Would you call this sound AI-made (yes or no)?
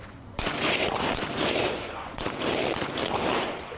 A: yes